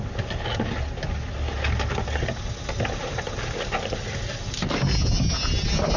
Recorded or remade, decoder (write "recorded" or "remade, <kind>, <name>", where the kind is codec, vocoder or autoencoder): recorded